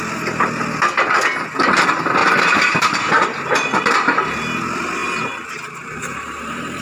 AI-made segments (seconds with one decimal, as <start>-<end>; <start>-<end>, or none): 2.2-2.9; 5.0-6.8